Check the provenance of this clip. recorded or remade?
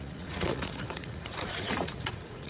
remade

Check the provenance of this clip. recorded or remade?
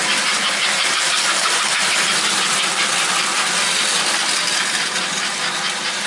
recorded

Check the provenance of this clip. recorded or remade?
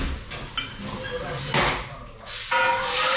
recorded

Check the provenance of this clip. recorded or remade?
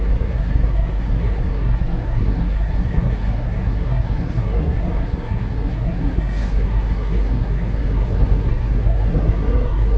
remade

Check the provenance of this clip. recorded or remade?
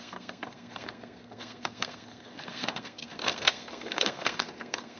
remade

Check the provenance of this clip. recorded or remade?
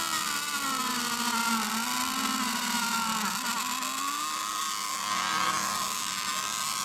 recorded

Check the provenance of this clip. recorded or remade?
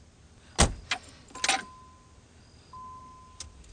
recorded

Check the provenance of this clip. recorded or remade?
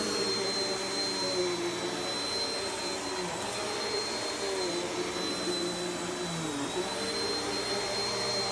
recorded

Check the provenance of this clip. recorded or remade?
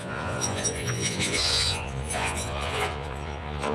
remade